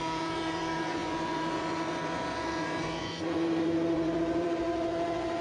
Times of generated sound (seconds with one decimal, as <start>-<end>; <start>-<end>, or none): 0.0-5.4